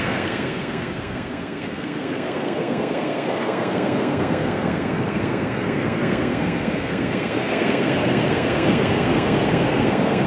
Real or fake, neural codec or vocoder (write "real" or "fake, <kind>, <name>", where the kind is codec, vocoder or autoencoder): fake, codec, SNAC